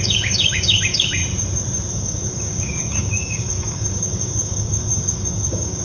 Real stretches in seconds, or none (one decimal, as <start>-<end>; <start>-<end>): 1.2-1.9